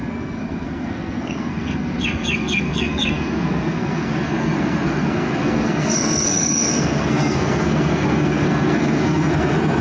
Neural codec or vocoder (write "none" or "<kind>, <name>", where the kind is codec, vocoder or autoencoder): codec, SNAC